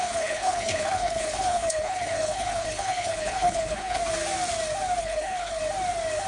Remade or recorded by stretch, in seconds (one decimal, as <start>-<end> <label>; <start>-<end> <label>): 0.0-4.0 remade; 4.0-5.0 recorded; 5.0-5.6 remade; 5.6-6.3 recorded